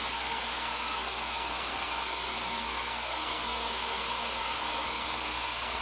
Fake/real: fake